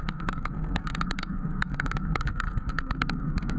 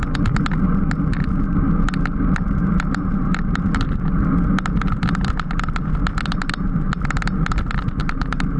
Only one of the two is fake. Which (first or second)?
first